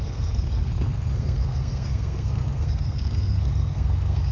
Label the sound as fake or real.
fake